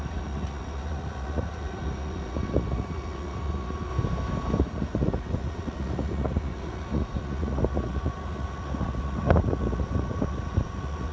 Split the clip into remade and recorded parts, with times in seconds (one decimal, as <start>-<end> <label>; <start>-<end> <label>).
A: 0.0-3.9 remade; 3.9-4.6 recorded; 4.6-11.1 remade

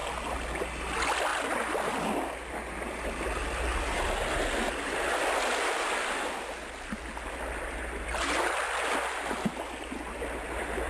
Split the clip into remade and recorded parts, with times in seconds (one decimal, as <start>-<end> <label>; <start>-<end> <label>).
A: 0.0-10.9 recorded

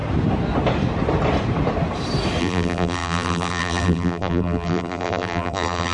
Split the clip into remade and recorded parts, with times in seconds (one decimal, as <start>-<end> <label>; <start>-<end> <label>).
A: 0.0-2.4 recorded; 2.4-5.9 remade